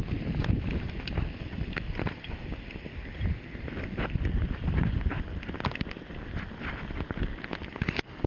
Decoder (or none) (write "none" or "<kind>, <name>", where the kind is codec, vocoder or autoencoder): none